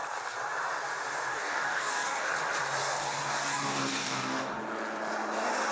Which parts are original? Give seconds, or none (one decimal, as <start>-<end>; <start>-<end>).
0.0-1.3; 2.3-3.0; 4.6-5.7